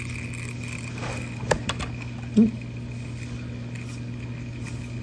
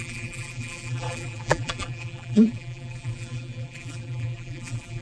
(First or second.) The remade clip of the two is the second